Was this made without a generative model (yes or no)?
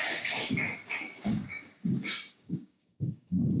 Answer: no